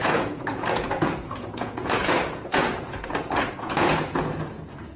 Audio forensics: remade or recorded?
remade